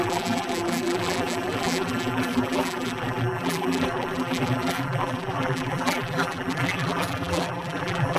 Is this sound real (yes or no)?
no